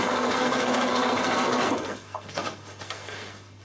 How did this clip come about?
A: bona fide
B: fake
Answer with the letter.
B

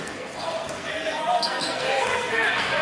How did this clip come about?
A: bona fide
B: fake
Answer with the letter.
B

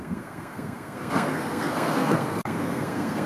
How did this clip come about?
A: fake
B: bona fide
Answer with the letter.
A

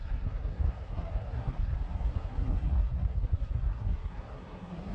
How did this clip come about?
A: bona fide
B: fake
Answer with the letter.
B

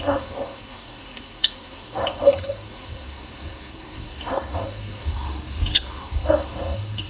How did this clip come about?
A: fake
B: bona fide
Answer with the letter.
A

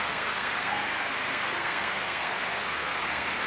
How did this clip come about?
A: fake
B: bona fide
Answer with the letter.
A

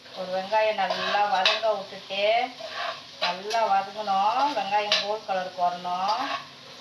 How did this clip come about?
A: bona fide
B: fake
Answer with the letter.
A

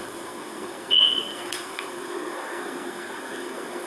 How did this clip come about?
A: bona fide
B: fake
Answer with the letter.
B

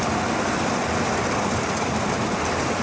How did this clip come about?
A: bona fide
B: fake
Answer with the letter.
A